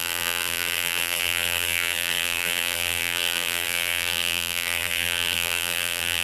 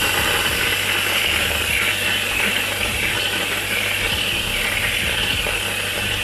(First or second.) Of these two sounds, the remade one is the first